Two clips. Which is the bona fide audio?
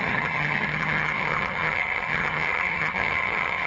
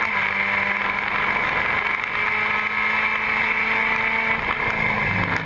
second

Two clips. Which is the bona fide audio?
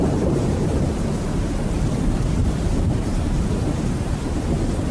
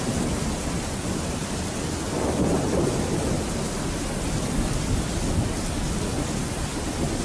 second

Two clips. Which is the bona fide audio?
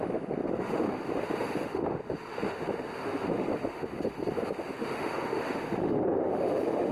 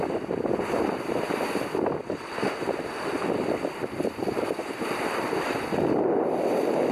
second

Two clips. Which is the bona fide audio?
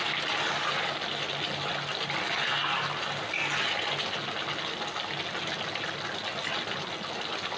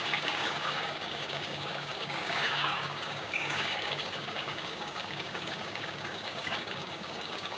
first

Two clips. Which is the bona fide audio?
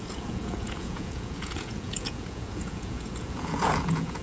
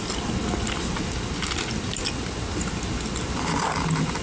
second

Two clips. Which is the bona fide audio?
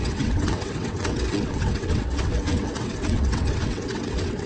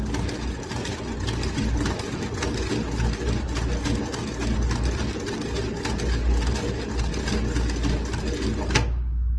second